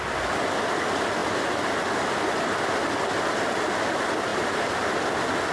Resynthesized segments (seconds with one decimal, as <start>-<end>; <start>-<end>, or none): 4.3-5.0